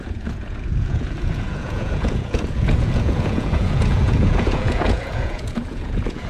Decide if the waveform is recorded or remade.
remade